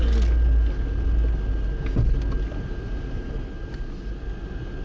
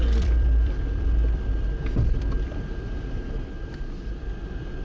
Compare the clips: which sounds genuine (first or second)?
first